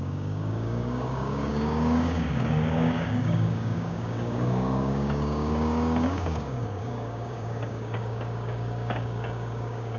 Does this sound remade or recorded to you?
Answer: remade